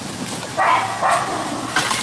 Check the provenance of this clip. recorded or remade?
recorded